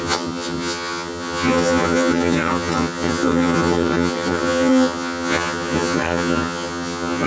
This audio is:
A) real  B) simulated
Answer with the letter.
B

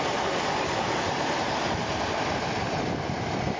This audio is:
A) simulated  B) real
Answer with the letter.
A